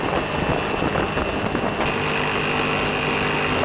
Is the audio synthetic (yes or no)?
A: no